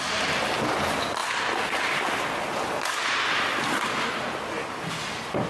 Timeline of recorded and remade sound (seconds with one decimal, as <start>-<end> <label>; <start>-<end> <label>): 0.0-5.5 recorded